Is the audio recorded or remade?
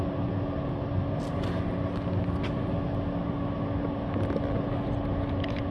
recorded